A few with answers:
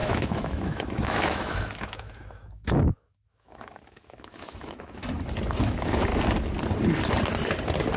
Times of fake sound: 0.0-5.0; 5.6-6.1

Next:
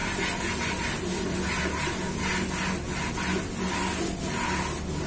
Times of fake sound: none

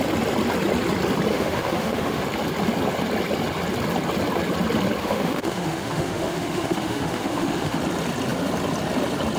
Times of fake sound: 1.3-2.2; 5.0-7.8

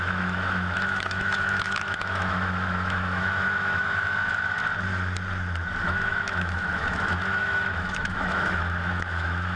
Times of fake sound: 0.0-4.6; 5.8-9.6